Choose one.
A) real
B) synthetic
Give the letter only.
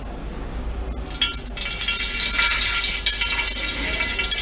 A